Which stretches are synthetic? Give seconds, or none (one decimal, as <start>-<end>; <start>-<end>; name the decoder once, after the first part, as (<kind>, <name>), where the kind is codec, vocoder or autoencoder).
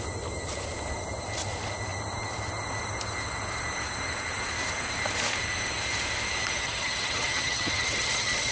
6.6-8.5 (vocoder, HiFi-GAN)